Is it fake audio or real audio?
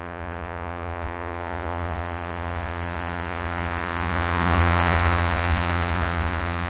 fake